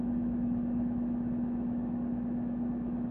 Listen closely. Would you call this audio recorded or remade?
remade